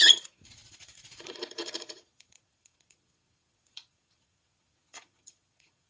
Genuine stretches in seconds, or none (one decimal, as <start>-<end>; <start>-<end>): none

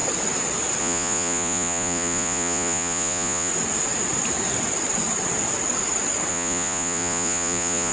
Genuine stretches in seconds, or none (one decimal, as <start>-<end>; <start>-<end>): 0.0-0.8; 3.5-6.3